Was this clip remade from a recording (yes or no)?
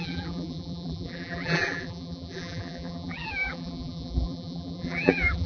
yes